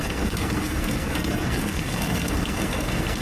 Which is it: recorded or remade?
remade